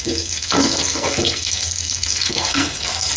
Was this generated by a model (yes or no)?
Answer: yes